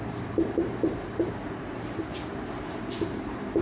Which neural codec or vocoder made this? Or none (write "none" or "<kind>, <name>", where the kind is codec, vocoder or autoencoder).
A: vocoder, BigVGAN v2